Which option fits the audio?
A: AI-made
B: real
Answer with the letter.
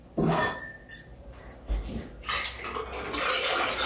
B